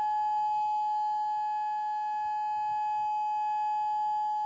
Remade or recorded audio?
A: recorded